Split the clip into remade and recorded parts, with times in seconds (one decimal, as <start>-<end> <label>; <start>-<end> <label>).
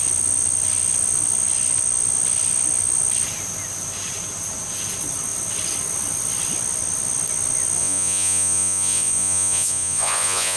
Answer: 0.0-7.8 recorded; 7.8-10.6 remade